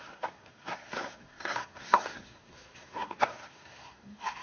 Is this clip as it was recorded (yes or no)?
no